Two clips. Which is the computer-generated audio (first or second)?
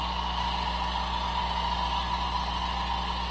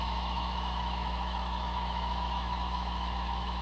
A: second